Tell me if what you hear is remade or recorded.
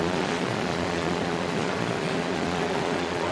remade